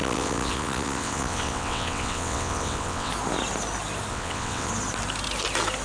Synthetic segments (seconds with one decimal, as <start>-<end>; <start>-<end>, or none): 0.0-3.1; 4.1-4.7